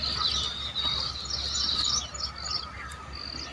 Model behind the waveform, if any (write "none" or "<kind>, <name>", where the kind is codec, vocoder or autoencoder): none